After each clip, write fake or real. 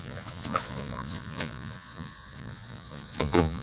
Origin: fake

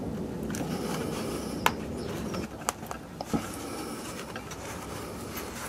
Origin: real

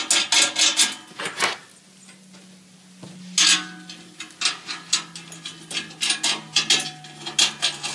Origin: real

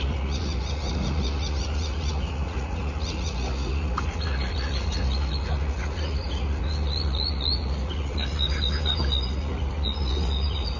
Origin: fake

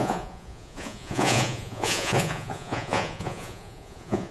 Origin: fake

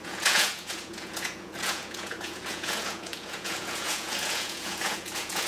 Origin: fake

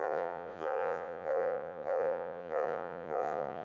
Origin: fake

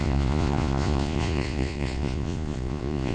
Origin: fake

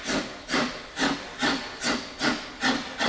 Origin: real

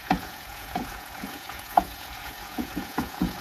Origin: fake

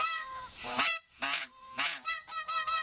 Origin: fake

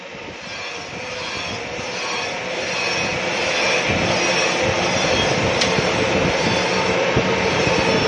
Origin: real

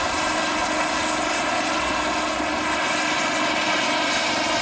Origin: real